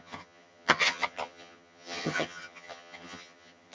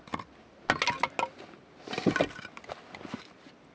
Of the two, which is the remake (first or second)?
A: first